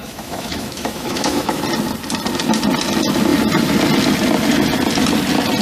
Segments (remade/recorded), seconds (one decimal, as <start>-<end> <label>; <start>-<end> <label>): 0.0-1.6 remade; 1.6-5.6 recorded